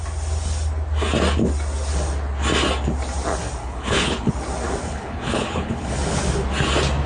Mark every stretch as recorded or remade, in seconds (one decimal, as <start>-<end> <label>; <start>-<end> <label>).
0.0-3.6 recorded; 3.6-4.3 remade; 4.3-4.8 recorded; 4.8-6.2 remade; 6.2-7.1 recorded